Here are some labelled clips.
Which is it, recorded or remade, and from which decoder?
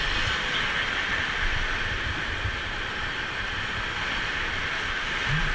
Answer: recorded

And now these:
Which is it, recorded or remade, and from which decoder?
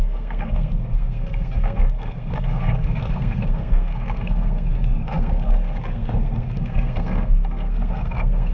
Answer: remade, codec, SNAC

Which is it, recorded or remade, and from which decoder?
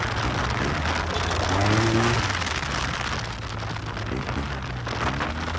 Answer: recorded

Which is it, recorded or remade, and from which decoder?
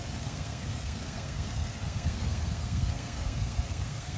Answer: remade, codec, SNAC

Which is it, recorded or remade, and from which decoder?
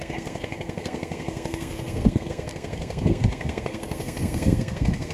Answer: remade, codec, SNAC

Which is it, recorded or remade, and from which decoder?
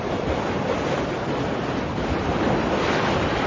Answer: recorded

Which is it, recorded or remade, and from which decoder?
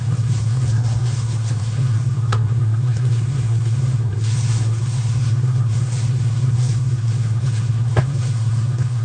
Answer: remade, codec, SNAC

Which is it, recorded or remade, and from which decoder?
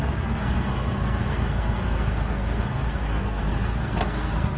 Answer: remade, codec, SNAC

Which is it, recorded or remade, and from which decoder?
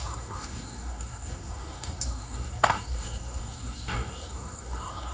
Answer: remade, codec, SNAC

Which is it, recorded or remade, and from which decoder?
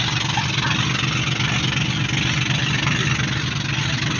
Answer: recorded